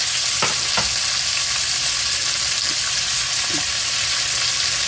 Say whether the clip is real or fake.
real